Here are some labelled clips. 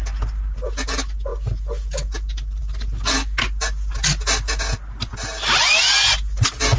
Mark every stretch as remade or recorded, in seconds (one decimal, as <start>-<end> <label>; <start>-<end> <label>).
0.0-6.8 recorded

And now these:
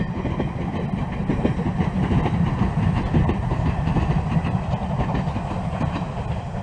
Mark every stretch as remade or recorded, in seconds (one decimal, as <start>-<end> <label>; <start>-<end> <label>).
0.0-6.6 recorded

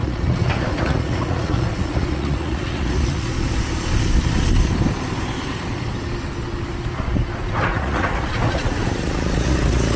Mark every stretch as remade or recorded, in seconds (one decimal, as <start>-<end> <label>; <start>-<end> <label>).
0.0-3.3 remade; 3.3-7.4 recorded; 7.4-10.0 remade

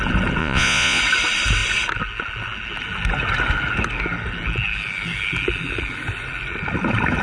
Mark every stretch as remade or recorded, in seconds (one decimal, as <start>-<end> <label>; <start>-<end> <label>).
0.0-0.4 recorded; 0.4-1.0 remade; 1.0-7.2 recorded